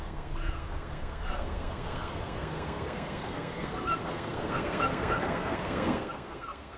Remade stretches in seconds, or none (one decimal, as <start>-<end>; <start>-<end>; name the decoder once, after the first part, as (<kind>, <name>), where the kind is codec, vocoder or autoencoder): 0.0-6.8 (codec, SNAC)

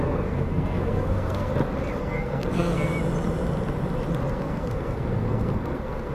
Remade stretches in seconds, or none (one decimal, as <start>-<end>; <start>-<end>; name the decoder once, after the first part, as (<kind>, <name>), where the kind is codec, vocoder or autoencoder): 0.0-1.5 (codec, SNAC); 2.0-2.9; 4.3-6.1

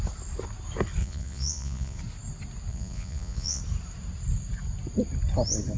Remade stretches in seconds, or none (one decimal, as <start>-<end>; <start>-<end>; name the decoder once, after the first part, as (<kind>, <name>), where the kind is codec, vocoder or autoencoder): 1.0-2.0 (vocoder, Vocos); 2.7-3.6